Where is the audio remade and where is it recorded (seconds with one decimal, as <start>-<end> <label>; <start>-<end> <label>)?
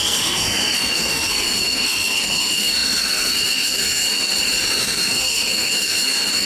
0.0-4.3 remade; 4.3-4.8 recorded; 4.8-6.5 remade